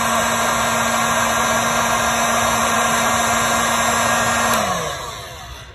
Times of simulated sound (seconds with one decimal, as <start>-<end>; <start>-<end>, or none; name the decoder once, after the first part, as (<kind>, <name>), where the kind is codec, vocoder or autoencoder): 2.6-3.1 (vocoder, BigVGAN v2)